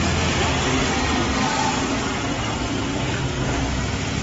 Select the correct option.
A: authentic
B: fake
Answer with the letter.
A